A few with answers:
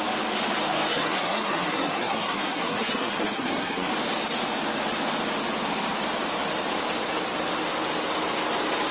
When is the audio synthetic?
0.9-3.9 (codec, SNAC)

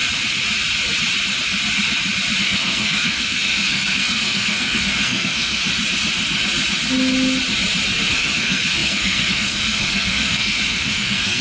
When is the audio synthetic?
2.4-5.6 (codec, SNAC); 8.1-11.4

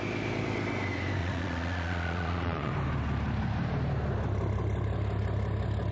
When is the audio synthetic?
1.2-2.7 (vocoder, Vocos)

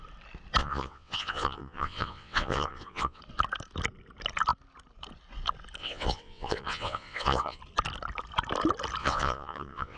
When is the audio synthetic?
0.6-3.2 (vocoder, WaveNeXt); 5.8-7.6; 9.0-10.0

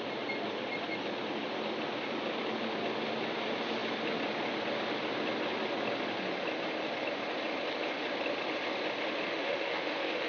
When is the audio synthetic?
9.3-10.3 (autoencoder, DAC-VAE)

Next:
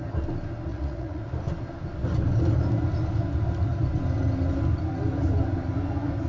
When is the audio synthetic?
0.7-1.2 (vocoder, Vocos)

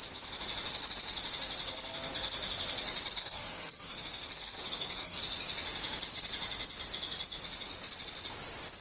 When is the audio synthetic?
3.2-5.2 (codec, SNAC)

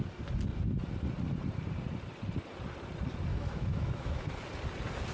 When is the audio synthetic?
3.3-4.3 (autoencoder, DAC-VAE)